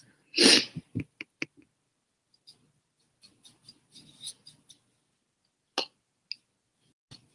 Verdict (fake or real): real